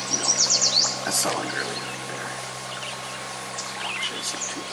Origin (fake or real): real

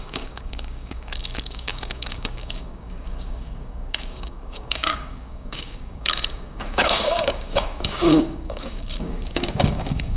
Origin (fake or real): fake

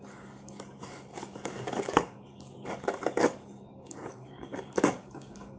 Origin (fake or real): fake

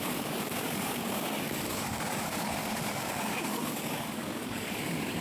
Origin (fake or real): fake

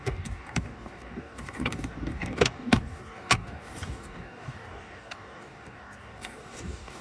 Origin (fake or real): fake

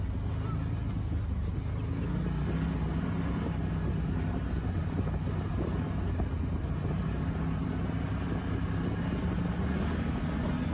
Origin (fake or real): real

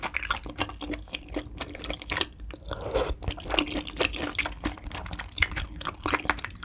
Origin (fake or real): real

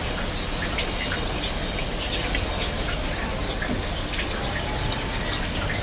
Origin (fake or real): real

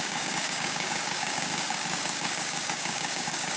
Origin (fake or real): fake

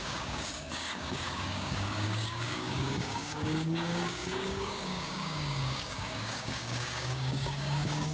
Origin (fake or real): fake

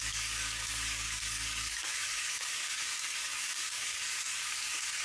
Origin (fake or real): fake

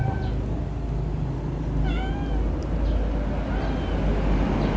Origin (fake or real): real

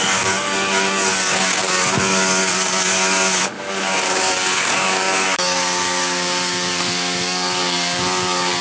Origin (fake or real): fake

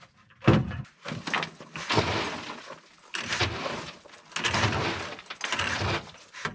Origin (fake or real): real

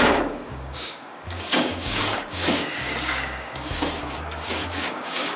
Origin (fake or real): fake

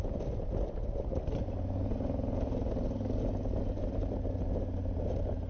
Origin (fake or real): real